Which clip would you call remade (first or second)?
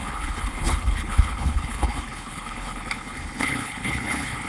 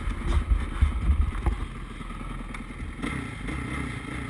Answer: first